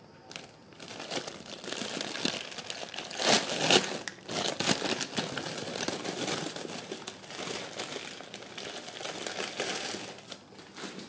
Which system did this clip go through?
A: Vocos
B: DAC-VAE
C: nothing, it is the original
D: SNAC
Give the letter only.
C